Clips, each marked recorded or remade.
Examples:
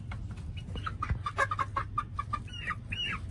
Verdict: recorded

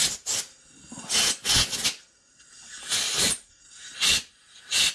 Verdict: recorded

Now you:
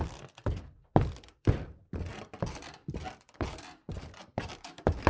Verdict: remade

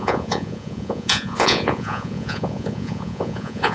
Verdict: remade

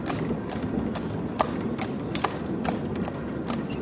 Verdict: recorded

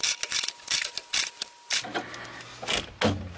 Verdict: recorded